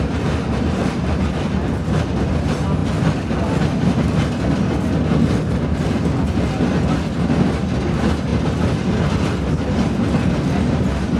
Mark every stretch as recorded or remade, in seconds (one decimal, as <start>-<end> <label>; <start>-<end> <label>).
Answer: 0.0-11.2 recorded